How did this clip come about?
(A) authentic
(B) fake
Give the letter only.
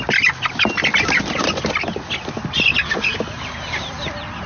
A